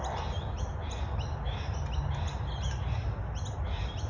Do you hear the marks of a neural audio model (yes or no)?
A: no